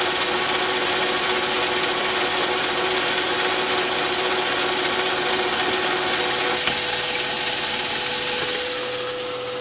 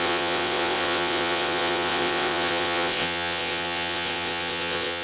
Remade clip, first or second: second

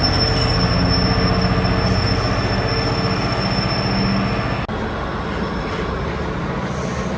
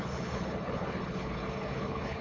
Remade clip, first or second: second